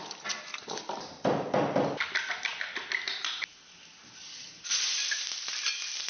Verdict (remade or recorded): recorded